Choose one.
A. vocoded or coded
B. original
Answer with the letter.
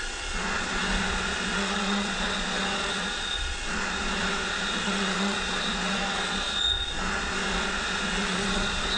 A